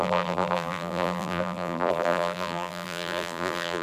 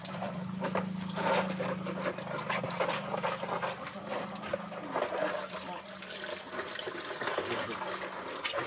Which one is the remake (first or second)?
first